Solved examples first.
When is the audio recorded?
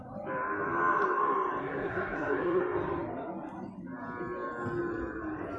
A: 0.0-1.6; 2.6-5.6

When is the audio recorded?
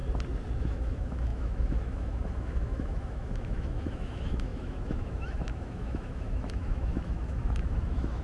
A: 0.0-0.6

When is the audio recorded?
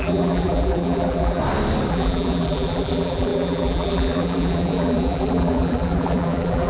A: 1.4-1.9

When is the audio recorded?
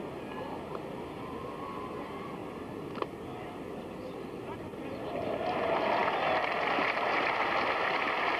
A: 2.4-4.0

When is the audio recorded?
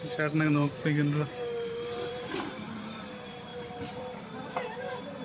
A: none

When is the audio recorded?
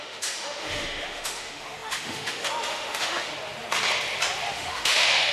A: 3.3-4.5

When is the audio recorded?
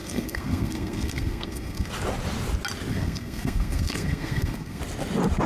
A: 1.9-2.9; 4.8-5.5